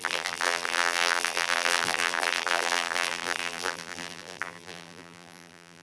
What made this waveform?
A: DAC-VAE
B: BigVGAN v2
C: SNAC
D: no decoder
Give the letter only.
B